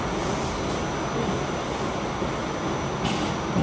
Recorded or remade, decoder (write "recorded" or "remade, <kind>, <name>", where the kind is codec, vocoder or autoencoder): recorded